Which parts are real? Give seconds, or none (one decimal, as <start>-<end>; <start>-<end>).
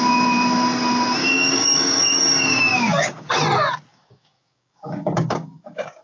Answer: 0.0-1.2; 3.3-3.9